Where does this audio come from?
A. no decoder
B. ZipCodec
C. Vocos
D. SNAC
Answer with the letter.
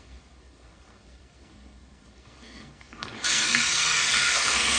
D